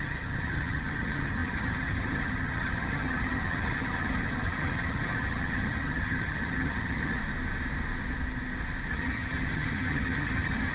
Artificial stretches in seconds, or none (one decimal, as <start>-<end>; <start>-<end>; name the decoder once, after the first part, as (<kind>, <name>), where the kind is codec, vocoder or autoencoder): 0.0-7.2 (vocoder, HiFi-GAN); 8.9-10.7